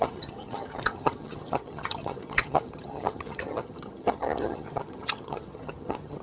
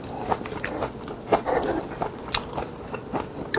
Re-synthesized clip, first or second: first